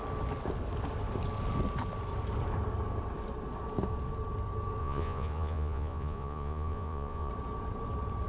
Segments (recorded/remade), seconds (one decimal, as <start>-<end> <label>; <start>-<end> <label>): 0.0-4.8 recorded; 4.8-7.3 remade; 7.3-8.3 recorded